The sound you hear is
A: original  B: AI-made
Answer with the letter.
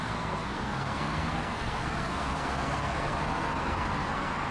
B